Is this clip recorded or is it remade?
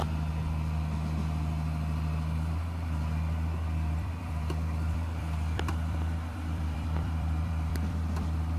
remade